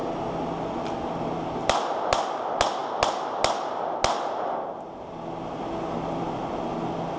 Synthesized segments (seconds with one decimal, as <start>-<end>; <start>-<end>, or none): none